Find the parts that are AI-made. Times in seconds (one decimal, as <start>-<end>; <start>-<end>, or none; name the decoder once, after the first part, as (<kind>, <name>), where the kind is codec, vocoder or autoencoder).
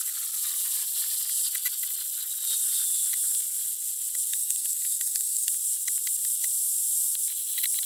4.3-5.5 (codec, SNAC)